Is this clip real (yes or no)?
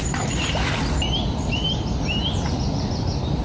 yes